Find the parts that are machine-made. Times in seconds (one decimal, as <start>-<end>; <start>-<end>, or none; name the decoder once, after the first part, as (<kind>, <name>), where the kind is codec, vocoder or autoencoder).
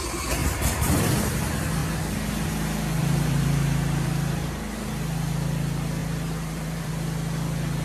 0.4-1.1 (vocoder, BigVGAN v2); 3.0-4.9; 6.0-6.9